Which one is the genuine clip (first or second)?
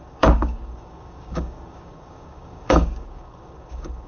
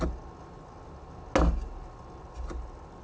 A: second